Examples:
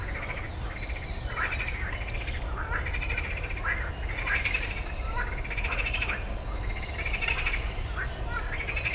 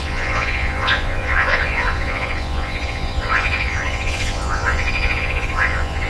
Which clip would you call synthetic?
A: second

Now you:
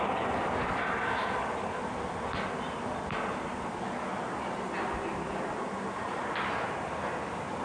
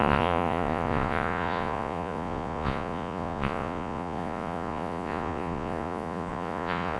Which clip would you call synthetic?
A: second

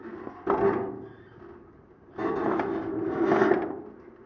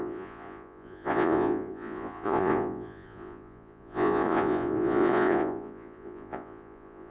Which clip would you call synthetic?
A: second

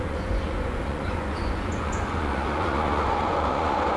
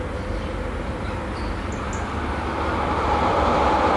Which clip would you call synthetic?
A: first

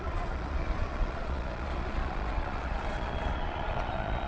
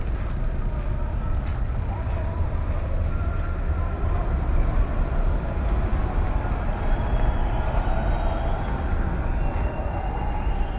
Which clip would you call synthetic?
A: first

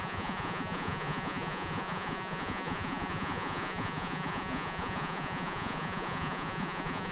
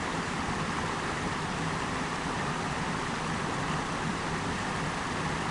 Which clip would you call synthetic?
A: first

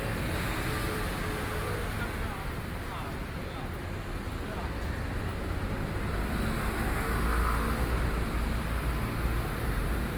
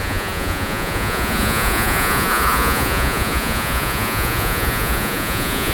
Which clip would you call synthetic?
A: second